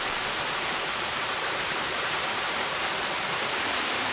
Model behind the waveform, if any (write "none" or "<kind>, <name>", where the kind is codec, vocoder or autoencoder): vocoder, BigVGAN v2